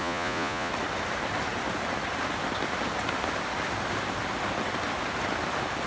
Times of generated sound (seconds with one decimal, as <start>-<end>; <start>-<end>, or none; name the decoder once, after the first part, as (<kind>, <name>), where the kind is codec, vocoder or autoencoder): 0.0-0.7 (vocoder, Vocos)